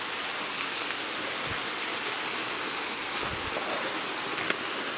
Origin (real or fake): real